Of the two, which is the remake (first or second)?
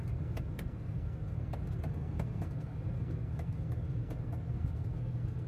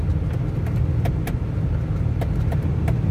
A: first